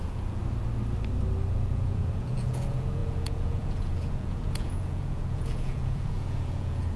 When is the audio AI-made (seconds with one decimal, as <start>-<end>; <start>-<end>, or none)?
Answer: 0.0-0.4; 1.5-7.0